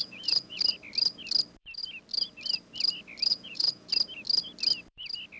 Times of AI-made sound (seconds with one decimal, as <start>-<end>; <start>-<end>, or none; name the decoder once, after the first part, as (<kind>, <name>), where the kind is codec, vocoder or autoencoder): 0.0-0.6 (vocoder, Vocos); 3.3-3.9